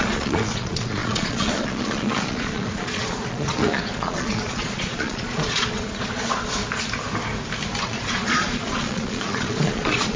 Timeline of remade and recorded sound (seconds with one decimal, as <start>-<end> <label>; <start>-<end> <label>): 0.0-6.6 remade; 6.6-7.8 recorded; 7.8-10.2 remade